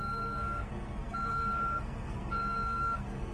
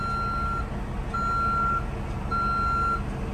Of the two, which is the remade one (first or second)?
first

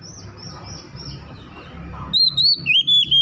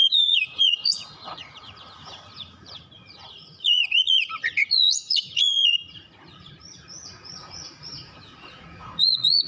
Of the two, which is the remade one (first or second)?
second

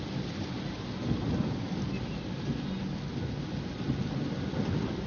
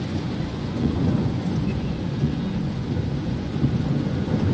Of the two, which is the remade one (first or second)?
second